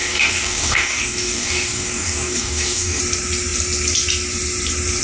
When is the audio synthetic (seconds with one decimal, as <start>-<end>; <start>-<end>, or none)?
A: 0.0-3.0